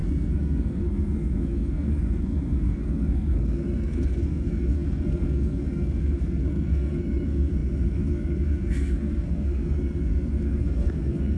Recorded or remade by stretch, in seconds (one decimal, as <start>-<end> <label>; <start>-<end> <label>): 0.0-11.4 remade